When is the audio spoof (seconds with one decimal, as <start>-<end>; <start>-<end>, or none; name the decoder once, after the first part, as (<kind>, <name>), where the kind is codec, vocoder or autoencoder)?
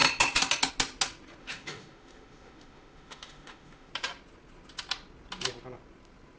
1.4-3.9 (autoencoder, DAC-VAE)